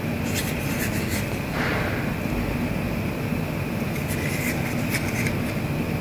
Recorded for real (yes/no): yes